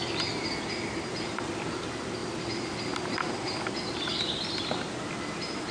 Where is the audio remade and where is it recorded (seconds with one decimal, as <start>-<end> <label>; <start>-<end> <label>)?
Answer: 0.0-5.7 recorded